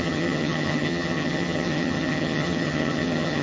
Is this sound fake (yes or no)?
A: yes